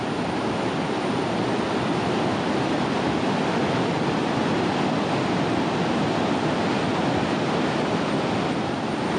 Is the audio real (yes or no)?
yes